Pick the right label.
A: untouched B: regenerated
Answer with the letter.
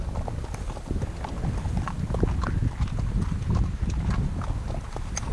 A